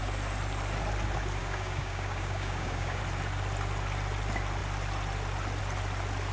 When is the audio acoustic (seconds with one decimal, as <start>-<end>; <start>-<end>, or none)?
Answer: 0.0-1.4; 3.0-6.3